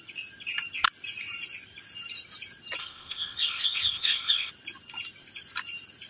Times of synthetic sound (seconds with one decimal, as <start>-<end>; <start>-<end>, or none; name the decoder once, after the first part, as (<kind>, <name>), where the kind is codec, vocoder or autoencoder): 2.8-4.5 (codec, ZipCodec)